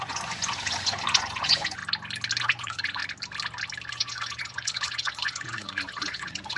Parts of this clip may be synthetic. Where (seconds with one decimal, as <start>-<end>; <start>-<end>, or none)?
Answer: 0.0-1.8; 2.4-3.0; 3.9-6.6